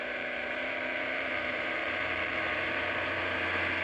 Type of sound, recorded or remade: remade